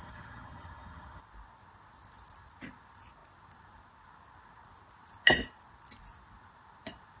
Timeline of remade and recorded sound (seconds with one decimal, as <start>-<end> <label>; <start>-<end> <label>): 0.0-1.2 remade; 1.2-7.2 recorded